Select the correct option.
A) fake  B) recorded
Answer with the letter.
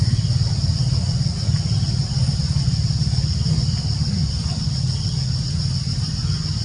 B